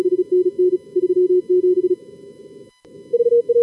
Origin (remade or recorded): recorded